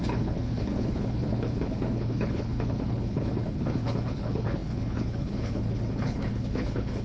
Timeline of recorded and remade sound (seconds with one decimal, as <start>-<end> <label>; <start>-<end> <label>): 0.0-7.0 remade